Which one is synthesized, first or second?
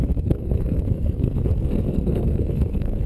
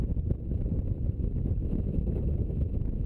first